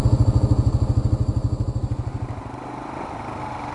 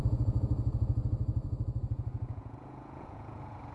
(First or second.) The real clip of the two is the first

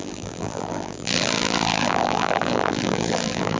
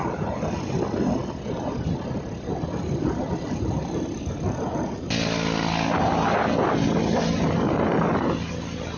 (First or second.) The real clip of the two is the second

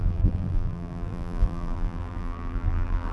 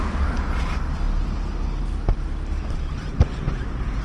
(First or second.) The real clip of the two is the second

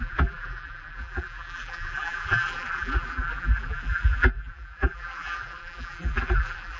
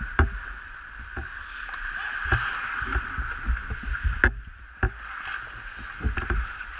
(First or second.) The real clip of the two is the second